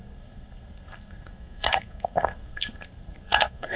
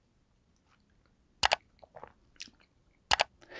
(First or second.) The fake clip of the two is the first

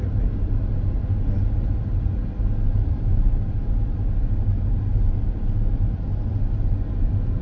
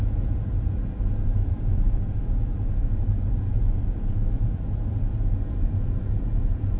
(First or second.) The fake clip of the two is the second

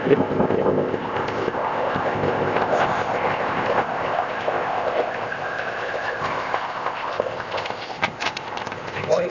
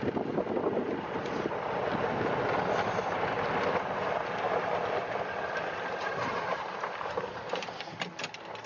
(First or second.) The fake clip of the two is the first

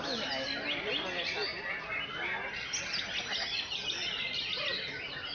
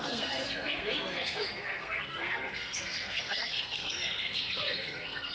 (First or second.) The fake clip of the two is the second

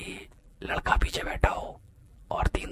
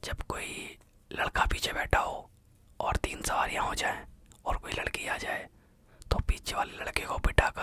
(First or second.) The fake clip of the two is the first